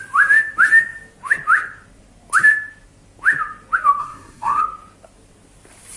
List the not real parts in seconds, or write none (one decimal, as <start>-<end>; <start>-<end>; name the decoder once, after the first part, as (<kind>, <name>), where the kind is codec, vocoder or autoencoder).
4.0-4.6 (codec, SNAC)